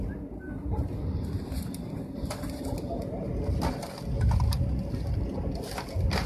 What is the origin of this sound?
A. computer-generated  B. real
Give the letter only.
B